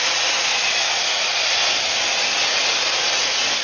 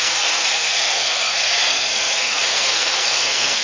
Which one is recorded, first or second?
first